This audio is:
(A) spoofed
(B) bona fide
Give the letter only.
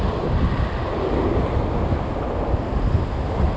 B